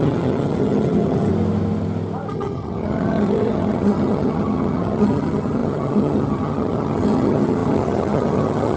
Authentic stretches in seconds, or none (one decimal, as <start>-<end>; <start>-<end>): 1.3-2.3